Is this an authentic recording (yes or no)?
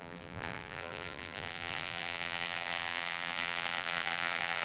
no